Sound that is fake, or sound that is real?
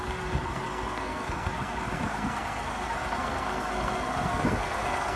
fake